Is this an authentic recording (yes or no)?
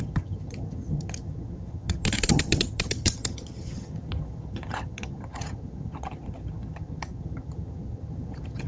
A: no